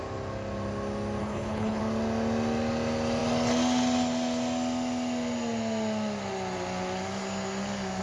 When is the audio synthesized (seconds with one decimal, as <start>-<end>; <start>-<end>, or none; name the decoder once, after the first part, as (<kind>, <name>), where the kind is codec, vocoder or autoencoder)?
1.2-1.8 (codec, HILCodec)